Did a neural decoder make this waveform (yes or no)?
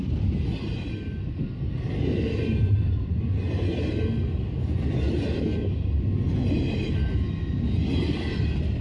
no